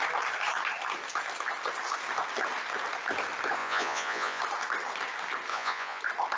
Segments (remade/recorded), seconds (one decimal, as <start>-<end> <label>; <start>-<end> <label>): 0.0-3.6 recorded; 3.6-4.4 remade; 4.4-5.5 recorded; 5.5-6.0 remade; 6.0-6.4 recorded